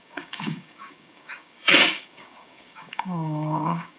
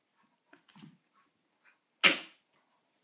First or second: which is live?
second